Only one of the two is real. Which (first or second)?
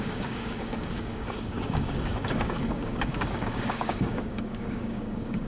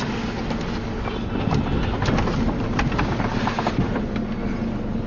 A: second